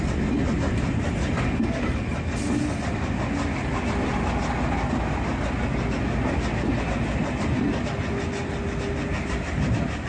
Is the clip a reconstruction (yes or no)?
no